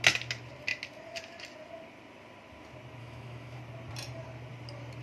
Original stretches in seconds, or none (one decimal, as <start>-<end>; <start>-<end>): 0.0-3.0; 3.6-5.0